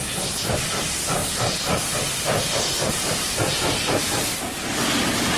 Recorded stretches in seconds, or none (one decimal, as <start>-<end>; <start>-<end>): 0.0-1.2; 4.4-5.4